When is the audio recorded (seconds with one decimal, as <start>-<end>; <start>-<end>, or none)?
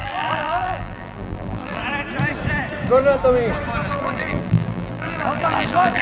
1.8-3.9